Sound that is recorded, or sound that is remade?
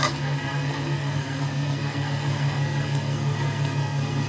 remade